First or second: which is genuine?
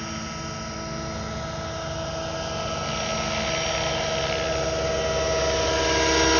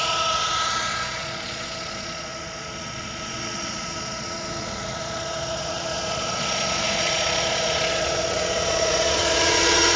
first